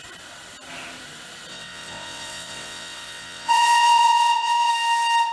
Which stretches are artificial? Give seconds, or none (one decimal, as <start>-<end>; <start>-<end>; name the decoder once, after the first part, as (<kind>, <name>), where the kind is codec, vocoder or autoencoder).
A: 1.5-4.7 (vocoder, WaveNeXt)